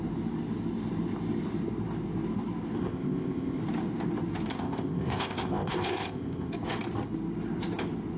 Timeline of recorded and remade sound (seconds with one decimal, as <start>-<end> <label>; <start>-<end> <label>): 0.0-2.8 recorded; 2.8-3.6 remade; 3.6-4.5 recorded; 4.5-6.5 remade; 6.5-8.2 recorded